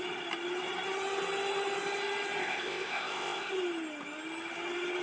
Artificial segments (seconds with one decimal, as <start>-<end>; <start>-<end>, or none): 2.4-3.5